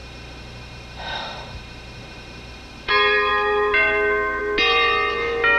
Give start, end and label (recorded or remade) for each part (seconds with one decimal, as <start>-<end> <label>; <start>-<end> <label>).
0.0-2.9 remade; 2.9-5.6 recorded